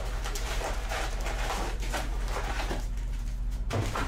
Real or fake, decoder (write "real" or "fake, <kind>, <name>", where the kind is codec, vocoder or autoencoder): fake, vocoder, BigVGAN v2